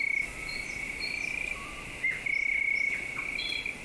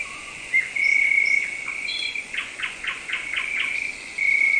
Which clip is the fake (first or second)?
second